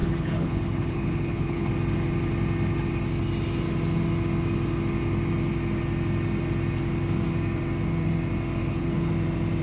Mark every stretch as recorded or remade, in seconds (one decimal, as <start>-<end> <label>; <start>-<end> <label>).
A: 0.0-1.7 remade; 1.7-8.6 recorded; 8.6-9.1 remade; 9.1-9.6 recorded